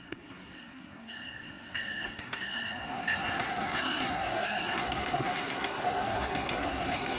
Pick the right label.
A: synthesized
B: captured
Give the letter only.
A